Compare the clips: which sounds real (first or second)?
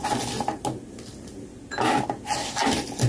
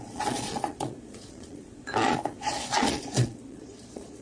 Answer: first